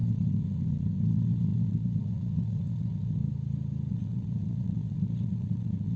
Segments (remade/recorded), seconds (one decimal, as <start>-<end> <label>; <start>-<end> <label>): 0.0-3.2 remade; 3.2-3.9 recorded; 3.9-6.0 remade